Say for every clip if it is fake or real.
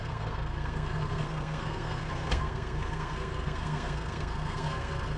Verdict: fake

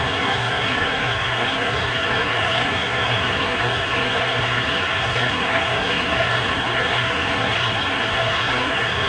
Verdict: fake